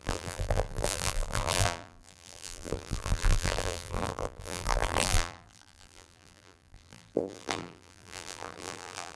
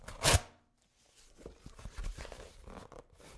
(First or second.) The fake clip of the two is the first